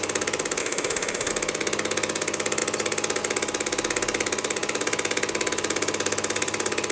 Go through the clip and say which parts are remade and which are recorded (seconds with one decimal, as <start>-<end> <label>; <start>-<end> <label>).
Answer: 0.0-0.6 recorded; 0.6-1.3 remade; 1.3-6.9 recorded